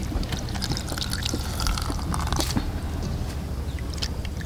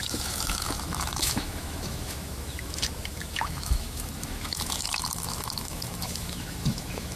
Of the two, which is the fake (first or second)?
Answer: second